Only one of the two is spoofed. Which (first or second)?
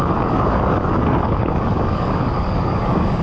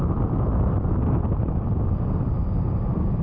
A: first